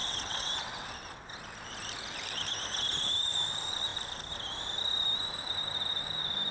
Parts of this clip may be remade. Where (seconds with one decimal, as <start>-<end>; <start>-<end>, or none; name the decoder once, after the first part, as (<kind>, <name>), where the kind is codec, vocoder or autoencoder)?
0.0-0.9 (vocoder, WaveNeXt)